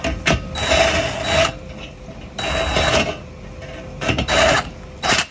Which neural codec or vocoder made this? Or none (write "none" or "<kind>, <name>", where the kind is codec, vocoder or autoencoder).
none